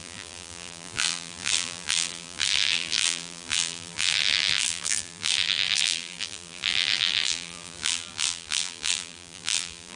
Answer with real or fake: fake